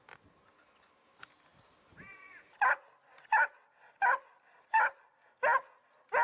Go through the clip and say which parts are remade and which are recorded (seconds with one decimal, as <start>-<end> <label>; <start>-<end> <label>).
0.0-1.5 recorded; 1.5-5.2 remade; 5.2-6.2 recorded